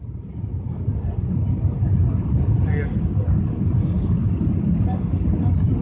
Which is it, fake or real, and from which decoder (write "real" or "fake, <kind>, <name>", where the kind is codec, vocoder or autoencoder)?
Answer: real